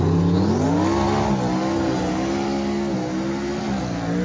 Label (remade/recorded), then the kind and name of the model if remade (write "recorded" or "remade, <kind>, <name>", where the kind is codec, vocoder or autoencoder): recorded